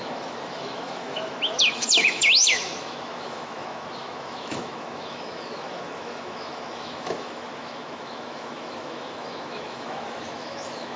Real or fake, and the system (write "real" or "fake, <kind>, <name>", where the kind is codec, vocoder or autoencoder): fake, autoencoder, DAC-VAE